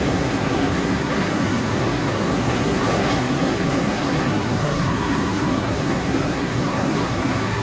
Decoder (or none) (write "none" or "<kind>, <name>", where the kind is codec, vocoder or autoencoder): codec, SNAC